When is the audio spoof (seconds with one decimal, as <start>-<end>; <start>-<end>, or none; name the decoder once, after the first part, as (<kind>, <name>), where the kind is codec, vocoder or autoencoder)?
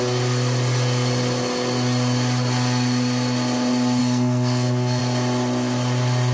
4.0-5.0 (codec, SNAC)